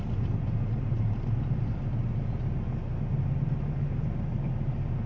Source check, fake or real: real